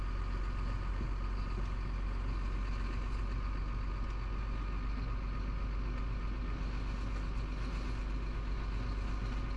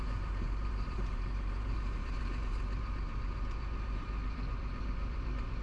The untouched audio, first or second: first